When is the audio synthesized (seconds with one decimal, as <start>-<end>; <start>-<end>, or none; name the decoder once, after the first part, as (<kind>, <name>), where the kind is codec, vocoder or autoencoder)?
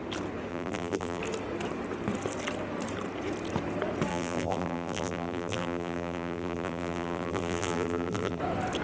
0.5-1.2 (vocoder, BigVGAN v2); 4.1-8.4